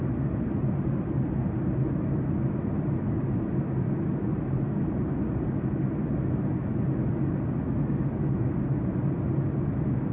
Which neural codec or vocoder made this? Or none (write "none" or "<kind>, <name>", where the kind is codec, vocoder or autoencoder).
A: none